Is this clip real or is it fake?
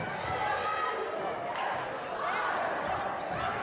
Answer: real